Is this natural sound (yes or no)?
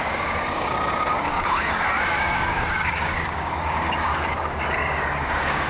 no